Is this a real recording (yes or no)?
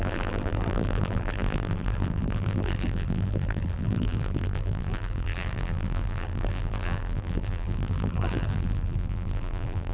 no